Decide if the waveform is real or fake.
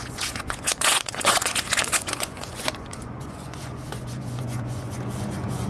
fake